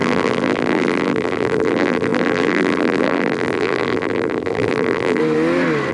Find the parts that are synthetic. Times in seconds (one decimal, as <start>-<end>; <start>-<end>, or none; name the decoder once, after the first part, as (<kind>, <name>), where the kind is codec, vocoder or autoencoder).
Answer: 0.0-5.2 (vocoder, BigVGAN v2)